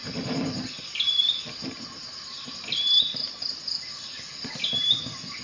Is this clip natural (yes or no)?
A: yes